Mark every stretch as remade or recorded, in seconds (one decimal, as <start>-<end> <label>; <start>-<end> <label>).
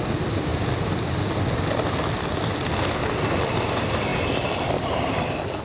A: 0.0-5.6 recorded